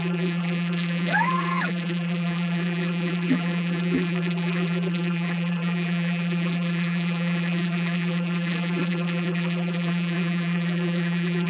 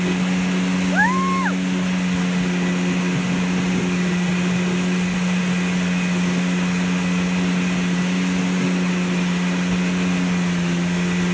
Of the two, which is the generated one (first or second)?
first